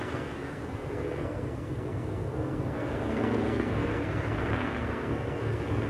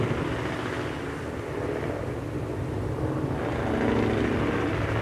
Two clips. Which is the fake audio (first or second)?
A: first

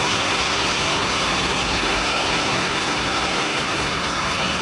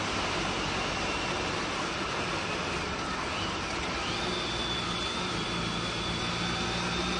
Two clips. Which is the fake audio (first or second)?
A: first